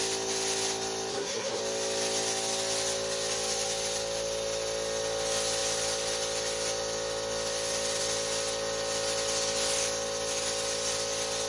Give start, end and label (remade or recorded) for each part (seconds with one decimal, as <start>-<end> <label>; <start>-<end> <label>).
0.0-1.1 recorded; 1.1-1.6 remade; 1.6-11.5 recorded